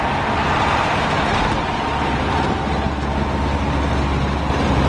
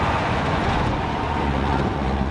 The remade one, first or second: second